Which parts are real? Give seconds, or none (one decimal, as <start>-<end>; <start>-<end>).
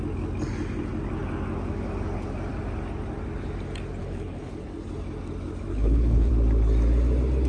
0.0-4.0; 4.5-5.7; 6.3-7.5